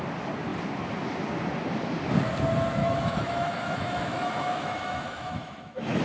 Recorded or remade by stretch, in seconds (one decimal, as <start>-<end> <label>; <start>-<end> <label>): 0.0-2.8 recorded; 2.8-6.0 remade